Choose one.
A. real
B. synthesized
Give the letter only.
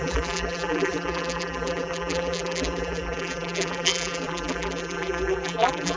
B